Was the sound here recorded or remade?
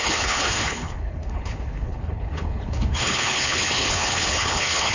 remade